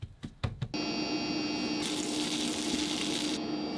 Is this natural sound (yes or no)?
yes